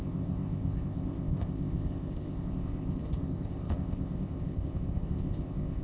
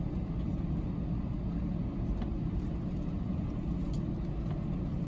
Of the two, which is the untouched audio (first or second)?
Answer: second